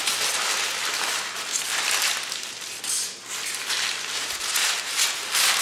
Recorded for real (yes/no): yes